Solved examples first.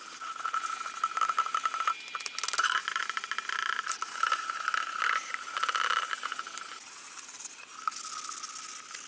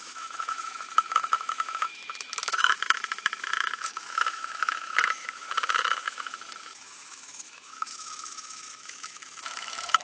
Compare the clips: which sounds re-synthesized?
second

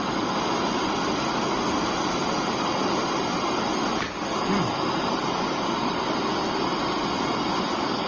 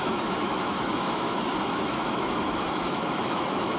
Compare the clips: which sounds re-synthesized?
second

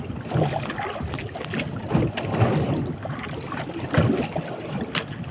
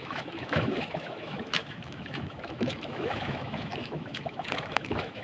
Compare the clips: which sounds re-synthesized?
second